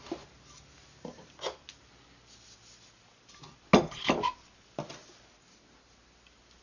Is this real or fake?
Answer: real